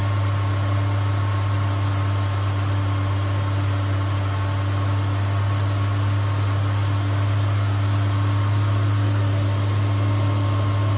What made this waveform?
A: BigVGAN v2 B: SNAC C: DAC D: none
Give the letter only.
D